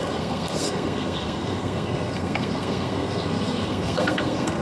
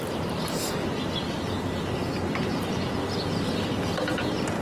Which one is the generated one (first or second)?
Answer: first